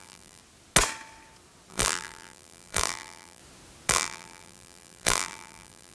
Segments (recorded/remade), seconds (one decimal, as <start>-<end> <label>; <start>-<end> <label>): 0.0-0.4 remade; 0.4-1.7 recorded; 1.7-3.4 remade; 3.4-3.9 recorded; 3.9-5.9 remade